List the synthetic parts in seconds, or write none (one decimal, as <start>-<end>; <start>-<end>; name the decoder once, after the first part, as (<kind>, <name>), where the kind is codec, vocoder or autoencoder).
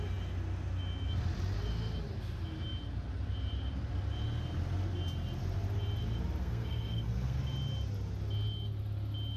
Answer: 6.4-7.4 (codec, SNAC)